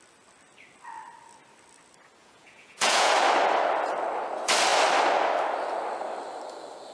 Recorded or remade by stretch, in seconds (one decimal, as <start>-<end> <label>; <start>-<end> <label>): 0.0-2.2 recorded; 2.2-3.1 remade; 3.1-6.9 recorded